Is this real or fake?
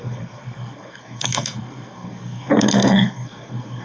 fake